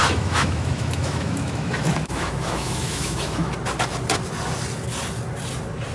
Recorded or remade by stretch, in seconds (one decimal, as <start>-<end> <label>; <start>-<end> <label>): 0.0-3.5 remade; 3.5-5.9 recorded